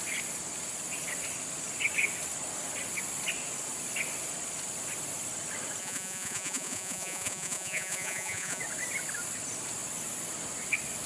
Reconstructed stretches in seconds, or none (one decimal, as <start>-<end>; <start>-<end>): 5.8-8.6